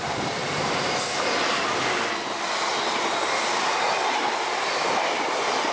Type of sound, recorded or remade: recorded